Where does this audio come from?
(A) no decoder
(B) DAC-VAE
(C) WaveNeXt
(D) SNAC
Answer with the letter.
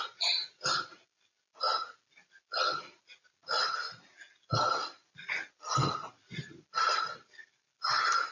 A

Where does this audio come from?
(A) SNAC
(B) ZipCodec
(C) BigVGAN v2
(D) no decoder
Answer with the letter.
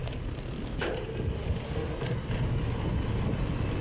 D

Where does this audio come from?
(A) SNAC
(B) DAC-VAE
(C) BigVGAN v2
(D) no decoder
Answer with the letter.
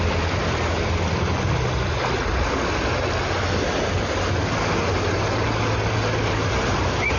D